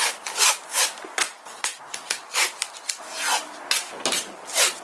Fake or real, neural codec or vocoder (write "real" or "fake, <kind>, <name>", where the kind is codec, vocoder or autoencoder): real